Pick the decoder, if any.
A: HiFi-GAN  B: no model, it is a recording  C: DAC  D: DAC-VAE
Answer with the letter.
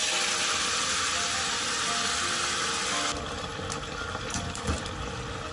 B